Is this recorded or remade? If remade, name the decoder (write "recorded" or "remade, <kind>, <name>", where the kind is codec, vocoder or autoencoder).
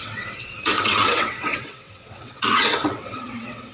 remade, vocoder, WaveNeXt